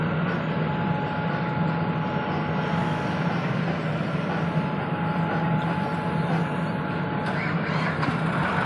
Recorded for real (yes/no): yes